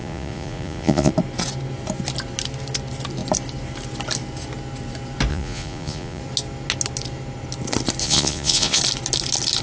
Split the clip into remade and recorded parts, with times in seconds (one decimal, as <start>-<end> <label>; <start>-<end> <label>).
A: 0.0-1.1 remade; 1.1-5.3 recorded; 5.3-6.2 remade; 6.2-8.0 recorded; 8.0-8.8 remade; 8.8-9.6 recorded